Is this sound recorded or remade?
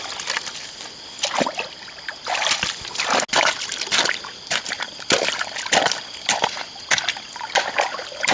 recorded